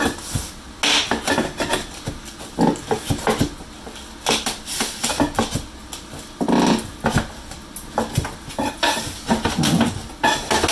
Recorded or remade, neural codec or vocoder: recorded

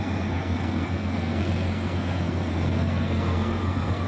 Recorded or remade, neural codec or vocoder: remade, codec, SNAC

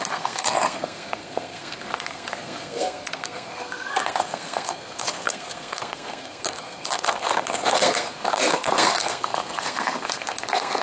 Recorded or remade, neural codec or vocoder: remade, codec, SNAC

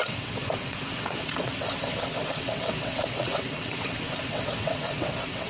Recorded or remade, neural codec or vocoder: remade, vocoder, WaveNeXt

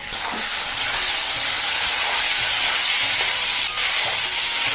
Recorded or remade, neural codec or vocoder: recorded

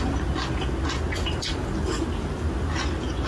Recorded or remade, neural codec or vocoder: recorded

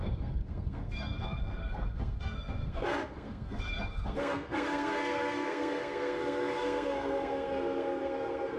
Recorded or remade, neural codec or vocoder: remade, codec, SNAC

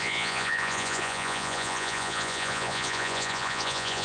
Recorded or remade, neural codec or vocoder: remade, vocoder, Vocos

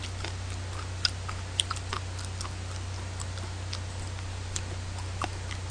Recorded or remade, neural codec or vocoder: recorded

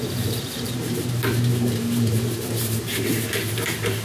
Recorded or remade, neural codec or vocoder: remade, vocoder, BigVGAN v2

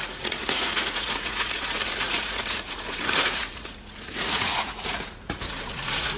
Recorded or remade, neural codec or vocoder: remade, vocoder, Vocos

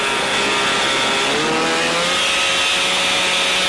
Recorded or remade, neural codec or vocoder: recorded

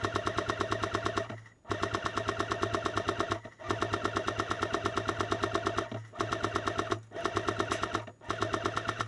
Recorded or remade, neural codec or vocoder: recorded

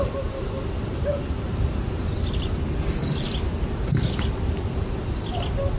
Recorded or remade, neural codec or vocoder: recorded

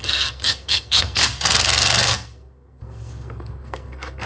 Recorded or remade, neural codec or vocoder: remade, codec, SNAC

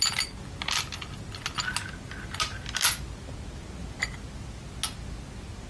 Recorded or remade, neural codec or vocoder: recorded